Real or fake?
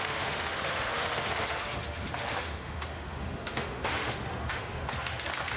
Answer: fake